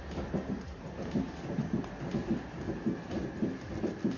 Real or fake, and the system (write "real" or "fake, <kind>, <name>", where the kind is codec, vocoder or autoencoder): real